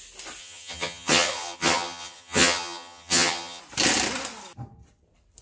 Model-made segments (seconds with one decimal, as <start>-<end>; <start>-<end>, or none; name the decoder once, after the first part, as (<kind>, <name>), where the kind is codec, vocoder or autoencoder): 0.4-3.6 (vocoder, HiFi-GAN)